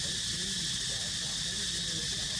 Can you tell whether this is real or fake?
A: real